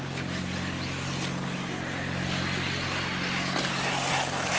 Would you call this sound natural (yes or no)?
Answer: yes